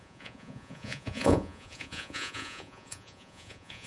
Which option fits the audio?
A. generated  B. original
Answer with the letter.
A